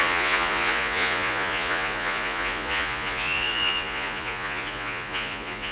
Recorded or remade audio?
remade